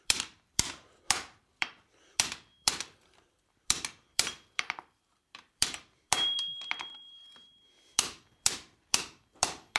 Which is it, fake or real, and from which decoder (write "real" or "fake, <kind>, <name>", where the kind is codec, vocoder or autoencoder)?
fake, vocoder, BigVGAN v2